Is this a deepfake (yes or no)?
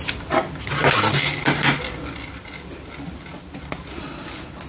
no